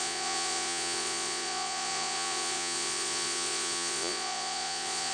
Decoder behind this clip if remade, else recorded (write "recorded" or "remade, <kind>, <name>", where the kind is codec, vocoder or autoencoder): remade, vocoder, Vocos